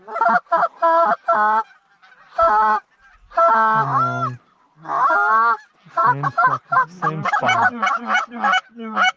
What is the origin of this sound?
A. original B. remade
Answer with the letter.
A